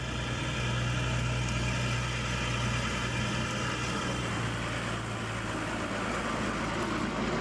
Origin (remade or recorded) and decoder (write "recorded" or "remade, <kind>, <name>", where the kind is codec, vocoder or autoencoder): recorded